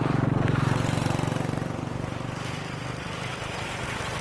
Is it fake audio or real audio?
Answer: fake